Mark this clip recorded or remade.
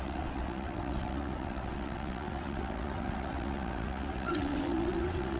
remade